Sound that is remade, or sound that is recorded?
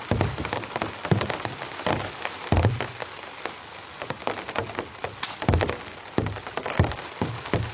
recorded